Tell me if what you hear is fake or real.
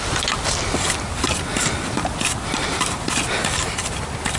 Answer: fake